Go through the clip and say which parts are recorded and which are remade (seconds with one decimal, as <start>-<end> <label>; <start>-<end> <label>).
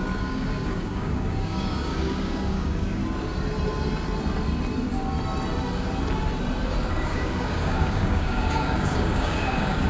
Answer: 0.0-3.0 remade; 3.0-6.9 recorded; 6.9-9.9 remade